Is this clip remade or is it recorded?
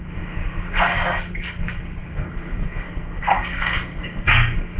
remade